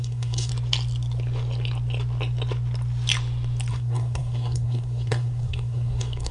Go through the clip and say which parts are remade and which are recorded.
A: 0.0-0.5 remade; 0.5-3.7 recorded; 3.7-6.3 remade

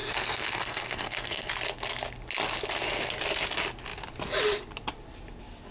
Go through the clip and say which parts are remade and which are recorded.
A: 0.0-1.5 remade; 1.5-5.7 recorded

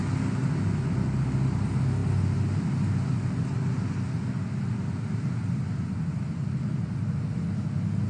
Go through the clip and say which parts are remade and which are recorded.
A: 0.0-8.1 recorded

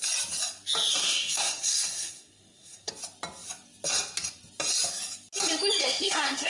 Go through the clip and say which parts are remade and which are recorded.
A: 0.0-1.0 recorded; 1.0-2.9 remade; 2.9-5.8 recorded; 5.8-6.5 remade